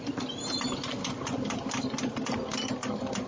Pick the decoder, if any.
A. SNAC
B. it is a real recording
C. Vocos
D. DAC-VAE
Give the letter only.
B